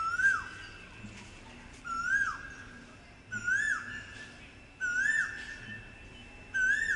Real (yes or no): yes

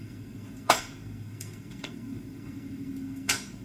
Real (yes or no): no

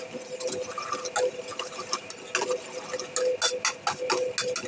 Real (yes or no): yes